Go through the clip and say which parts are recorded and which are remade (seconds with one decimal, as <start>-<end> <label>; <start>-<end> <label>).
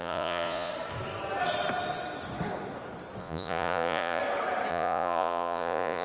0.0-0.7 remade; 0.7-3.2 recorded; 3.2-4.2 remade; 4.2-4.7 recorded; 4.7-6.0 remade